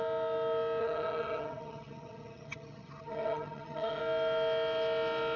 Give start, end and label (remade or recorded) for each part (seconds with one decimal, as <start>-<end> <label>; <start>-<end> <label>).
0.0-0.8 recorded; 0.8-4.0 remade; 4.0-5.4 recorded